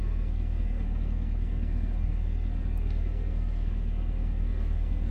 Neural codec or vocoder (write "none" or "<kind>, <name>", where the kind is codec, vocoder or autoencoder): codec, SNAC